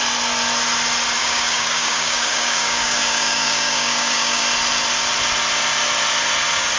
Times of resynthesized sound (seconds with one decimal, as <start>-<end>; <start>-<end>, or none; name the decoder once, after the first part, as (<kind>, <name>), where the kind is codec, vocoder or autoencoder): 1.2-4.4 (codec, DAC)